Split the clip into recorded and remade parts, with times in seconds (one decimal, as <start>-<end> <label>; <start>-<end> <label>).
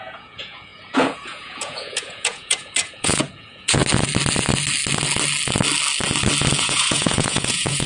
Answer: 0.0-3.8 remade; 3.8-6.6 recorded; 6.6-7.9 remade